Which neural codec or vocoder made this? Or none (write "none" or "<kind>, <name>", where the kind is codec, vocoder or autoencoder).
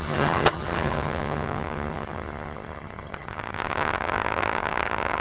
vocoder, HiFi-GAN